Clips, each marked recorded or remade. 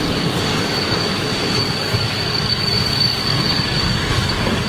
remade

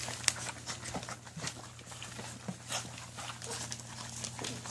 recorded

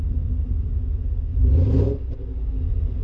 recorded